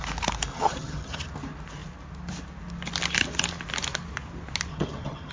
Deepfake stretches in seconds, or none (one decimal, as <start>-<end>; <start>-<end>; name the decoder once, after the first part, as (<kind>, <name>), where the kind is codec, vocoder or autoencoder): 0.5-1.2 (vocoder, HiFi-GAN); 4.7-5.3